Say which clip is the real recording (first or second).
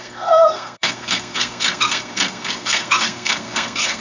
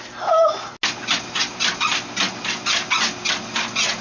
second